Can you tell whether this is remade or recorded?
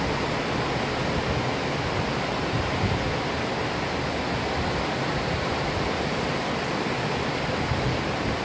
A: recorded